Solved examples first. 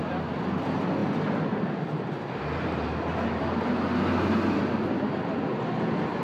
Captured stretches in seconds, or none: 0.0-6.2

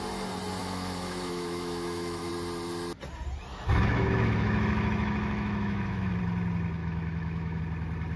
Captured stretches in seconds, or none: 0.0-0.6; 2.3-3.5; 6.2-6.8; 7.6-8.2

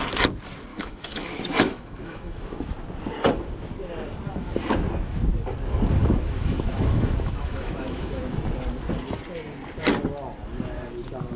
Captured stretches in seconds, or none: 0.0-0.7; 2.7-6.0; 8.2-11.4

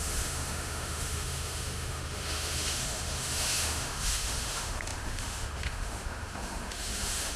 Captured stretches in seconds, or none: none

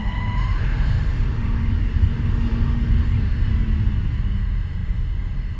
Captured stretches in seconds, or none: 3.5-4.2